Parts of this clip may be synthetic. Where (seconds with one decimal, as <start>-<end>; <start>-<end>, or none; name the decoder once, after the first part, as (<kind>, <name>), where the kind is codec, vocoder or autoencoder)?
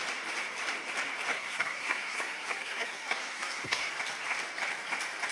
1.3-3.9 (codec, SNAC)